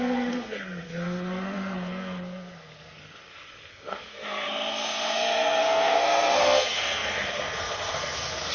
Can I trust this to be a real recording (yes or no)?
no